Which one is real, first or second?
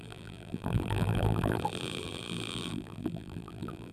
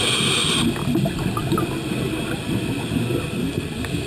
second